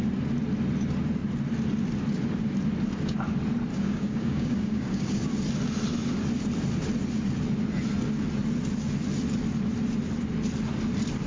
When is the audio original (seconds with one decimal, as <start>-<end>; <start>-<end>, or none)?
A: 0.0-3.7; 5.2-11.3